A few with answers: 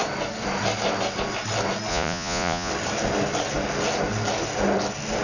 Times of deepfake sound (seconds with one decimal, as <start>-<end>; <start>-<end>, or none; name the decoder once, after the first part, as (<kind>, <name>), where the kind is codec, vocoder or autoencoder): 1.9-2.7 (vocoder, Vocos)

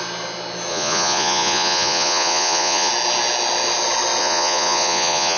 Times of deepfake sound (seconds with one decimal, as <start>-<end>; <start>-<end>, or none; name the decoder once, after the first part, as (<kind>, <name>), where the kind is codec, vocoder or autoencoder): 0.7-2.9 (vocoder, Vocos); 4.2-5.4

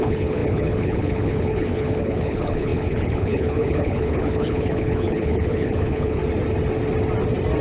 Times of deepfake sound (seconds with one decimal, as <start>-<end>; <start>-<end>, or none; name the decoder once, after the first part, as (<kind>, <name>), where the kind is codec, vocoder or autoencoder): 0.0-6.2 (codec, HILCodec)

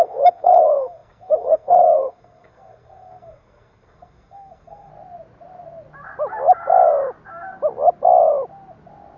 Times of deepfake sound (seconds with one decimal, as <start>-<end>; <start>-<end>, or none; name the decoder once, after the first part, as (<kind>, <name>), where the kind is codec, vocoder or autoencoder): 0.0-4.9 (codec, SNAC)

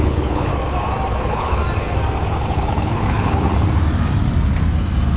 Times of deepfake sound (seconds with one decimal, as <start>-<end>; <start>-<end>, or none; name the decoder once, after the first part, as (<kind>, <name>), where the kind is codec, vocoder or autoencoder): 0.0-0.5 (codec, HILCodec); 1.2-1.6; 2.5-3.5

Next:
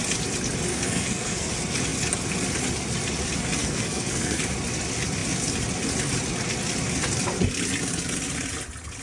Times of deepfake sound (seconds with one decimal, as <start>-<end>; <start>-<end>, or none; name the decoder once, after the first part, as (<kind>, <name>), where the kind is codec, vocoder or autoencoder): 0.7-1.5 (codec, SNAC); 3.6-4.4